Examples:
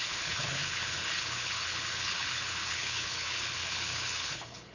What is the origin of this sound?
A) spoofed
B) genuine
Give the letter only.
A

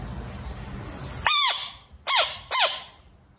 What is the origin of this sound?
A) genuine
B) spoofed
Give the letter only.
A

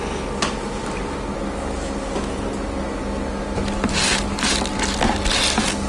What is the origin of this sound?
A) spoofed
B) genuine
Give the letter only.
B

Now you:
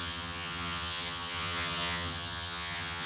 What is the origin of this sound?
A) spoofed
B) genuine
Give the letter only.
A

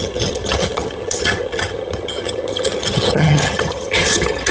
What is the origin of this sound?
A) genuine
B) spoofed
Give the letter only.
B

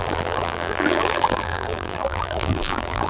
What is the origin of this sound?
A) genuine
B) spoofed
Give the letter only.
B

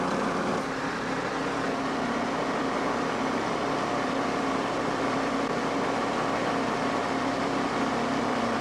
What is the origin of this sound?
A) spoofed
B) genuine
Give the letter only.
A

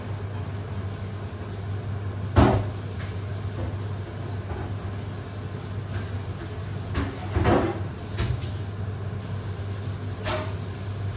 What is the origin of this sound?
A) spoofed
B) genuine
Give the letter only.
B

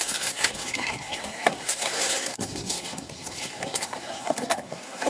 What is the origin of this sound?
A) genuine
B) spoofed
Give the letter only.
B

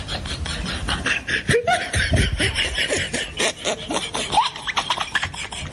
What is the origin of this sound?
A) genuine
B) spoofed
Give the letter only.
B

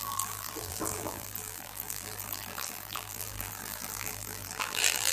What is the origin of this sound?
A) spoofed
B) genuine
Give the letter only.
A